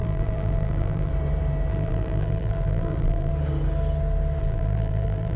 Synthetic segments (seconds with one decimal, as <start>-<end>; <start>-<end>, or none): 0.0-1.1; 1.7-3.3; 4.4-5.4